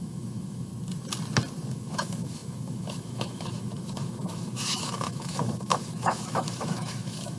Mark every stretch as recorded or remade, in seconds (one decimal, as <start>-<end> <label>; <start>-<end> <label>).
0.0-0.7 remade; 0.7-1.7 recorded; 1.7-7.4 remade